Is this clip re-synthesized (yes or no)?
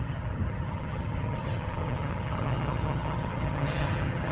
yes